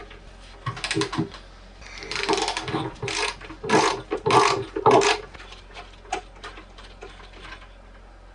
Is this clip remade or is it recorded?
recorded